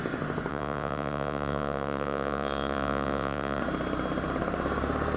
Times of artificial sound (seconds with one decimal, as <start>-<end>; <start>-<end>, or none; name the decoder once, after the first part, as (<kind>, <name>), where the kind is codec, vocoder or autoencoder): 0.5-3.6 (vocoder, Vocos)